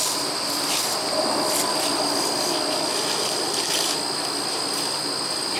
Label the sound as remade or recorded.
recorded